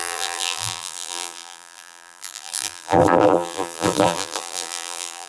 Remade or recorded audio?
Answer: remade